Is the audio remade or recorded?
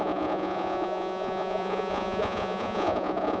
remade